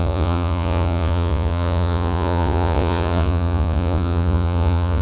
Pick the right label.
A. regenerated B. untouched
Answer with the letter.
A